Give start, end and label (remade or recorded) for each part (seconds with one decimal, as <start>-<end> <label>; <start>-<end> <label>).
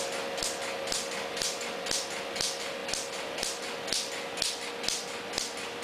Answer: 0.0-5.8 recorded